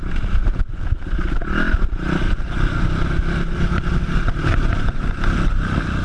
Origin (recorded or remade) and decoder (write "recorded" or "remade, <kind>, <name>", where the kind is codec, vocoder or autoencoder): recorded